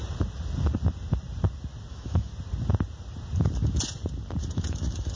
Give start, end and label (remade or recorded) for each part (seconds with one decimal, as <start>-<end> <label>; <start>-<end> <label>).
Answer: 0.0-1.9 recorded; 1.9-2.3 remade; 2.3-4.4 recorded; 4.4-5.2 remade